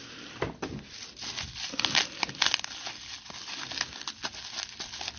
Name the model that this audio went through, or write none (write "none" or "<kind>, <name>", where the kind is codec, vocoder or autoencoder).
none